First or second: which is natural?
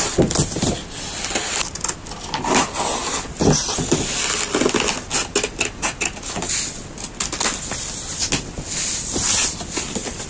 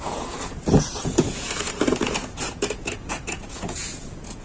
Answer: first